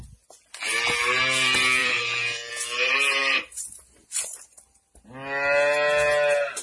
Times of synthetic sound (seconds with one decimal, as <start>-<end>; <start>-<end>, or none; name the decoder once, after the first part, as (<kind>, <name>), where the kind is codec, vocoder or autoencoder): 1.8-2.5 (vocoder, BigVGAN v2); 3.2-5.0